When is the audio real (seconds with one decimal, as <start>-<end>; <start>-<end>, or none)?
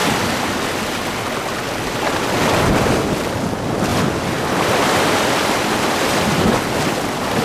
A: 0.0-7.4